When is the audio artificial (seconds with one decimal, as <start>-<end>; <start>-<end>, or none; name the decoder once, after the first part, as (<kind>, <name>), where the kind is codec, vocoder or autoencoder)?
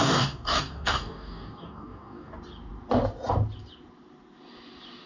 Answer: 0.0-2.3 (codec, DAC)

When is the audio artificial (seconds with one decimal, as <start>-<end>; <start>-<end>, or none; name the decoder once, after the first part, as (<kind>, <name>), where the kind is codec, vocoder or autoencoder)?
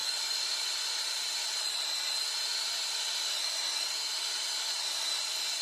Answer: none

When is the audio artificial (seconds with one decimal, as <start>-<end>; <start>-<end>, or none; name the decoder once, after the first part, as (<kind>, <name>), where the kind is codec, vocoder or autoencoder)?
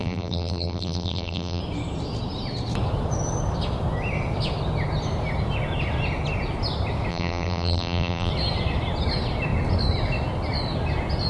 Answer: 0.0-1.6 (vocoder, BigVGAN v2); 7.1-8.3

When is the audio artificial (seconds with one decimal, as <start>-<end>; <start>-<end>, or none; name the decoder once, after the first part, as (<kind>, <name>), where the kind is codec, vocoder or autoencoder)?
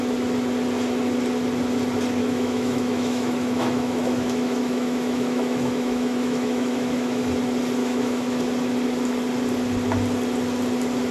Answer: 2.2-7.3 (autoencoder, DAC-VAE); 7.8-8.4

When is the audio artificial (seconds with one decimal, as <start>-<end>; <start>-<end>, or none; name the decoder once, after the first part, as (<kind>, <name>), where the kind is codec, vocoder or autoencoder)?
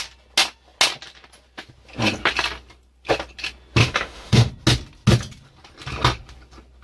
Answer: 3.8-4.5 (autoencoder, DAC-VAE)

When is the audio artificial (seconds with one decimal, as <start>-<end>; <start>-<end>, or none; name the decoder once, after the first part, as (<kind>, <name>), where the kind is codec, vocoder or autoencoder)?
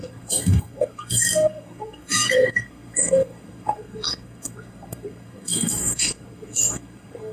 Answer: 0.0-7.3 (codec, SNAC)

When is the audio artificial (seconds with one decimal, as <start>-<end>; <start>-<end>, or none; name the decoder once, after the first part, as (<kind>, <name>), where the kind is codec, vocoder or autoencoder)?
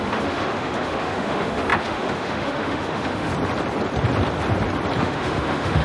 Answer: 0.0-3.3 (autoencoder, DAC-VAE); 5.0-5.8